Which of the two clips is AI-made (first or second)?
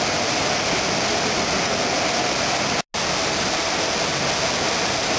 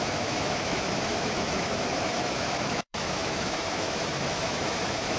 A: second